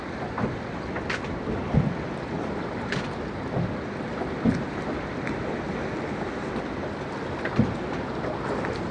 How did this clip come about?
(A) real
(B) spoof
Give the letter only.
A